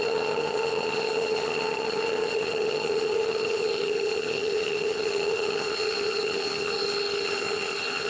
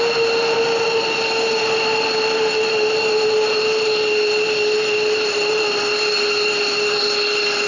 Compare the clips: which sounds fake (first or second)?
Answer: first